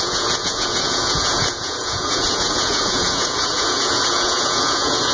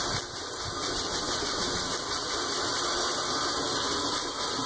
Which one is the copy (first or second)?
first